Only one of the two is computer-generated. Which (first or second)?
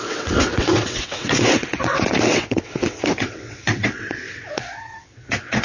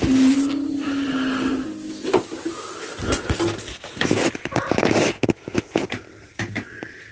first